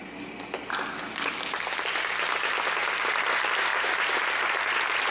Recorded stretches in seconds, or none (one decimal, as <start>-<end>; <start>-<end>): 0.0-5.1